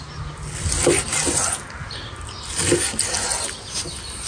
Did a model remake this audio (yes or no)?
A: no